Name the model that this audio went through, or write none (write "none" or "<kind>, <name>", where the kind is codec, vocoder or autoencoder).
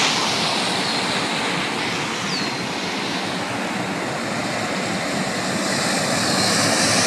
none